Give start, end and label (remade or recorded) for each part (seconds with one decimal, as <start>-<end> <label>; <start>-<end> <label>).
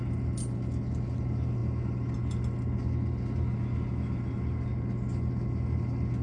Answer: 0.0-6.2 recorded